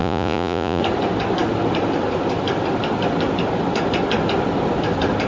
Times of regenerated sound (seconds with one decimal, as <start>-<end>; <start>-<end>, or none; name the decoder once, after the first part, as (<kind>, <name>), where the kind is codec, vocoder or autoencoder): 0.0-0.8 (vocoder, Vocos)